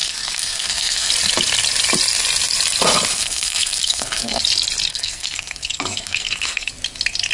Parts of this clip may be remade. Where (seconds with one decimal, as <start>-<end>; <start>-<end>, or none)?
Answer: 0.0-1.1; 3.1-4.4; 4.9-6.7